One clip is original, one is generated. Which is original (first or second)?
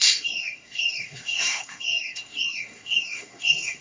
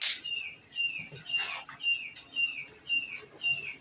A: second